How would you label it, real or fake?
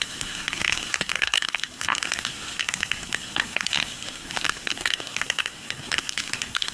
fake